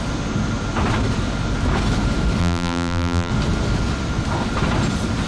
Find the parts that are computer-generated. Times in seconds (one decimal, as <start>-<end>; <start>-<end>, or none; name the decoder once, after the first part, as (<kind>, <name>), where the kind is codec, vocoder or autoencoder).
2.4-3.3 (vocoder, BigVGAN v2)